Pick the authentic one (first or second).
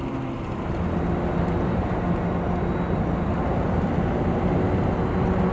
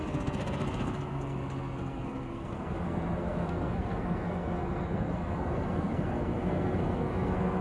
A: first